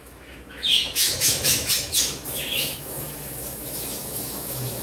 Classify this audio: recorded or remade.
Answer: remade